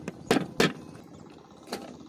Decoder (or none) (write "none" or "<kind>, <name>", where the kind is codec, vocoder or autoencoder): none